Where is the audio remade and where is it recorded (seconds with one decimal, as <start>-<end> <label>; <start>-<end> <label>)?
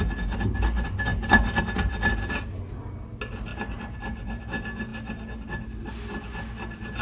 0.0-3.5 recorded; 3.5-4.4 remade; 4.4-7.0 recorded